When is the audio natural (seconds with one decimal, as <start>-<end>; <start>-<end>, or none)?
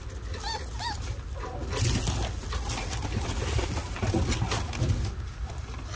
0.0-6.0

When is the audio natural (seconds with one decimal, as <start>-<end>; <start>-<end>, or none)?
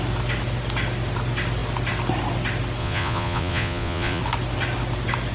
0.0-2.8; 4.2-5.3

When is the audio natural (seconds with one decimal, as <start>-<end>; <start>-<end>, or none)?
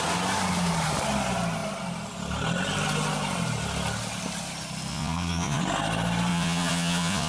0.0-4.9; 5.6-6.3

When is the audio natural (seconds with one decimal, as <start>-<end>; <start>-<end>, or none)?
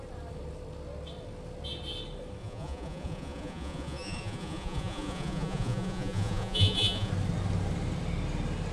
0.0-2.4; 7.1-8.7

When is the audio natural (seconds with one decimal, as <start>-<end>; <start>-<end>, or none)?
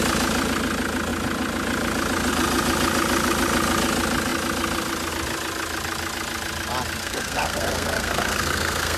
0.0-7.0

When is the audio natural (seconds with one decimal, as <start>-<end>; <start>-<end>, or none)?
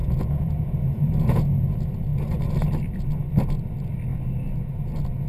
1.6-5.3